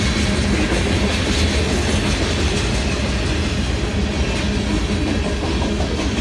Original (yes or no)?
yes